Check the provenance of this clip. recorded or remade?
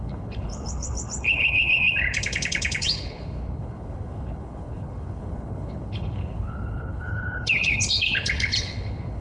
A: remade